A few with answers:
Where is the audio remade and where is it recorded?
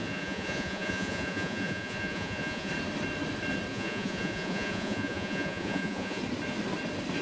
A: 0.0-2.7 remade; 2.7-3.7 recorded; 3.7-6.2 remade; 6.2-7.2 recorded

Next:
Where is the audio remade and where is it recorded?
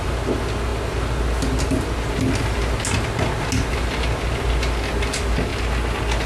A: 0.0-6.3 recorded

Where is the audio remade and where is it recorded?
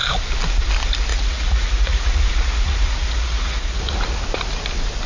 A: 0.0-1.1 recorded; 1.1-4.2 remade; 4.2-5.1 recorded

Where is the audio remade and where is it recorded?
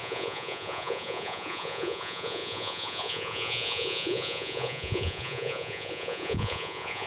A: 0.0-7.1 remade